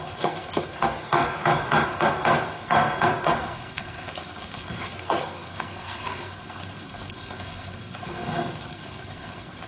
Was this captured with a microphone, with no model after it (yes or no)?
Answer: no